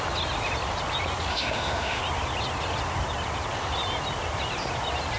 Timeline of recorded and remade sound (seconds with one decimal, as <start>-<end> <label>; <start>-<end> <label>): 0.0-1.3 recorded; 1.3-2.0 remade; 2.0-5.2 recorded